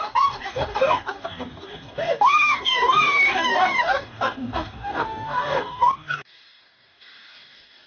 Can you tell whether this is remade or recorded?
remade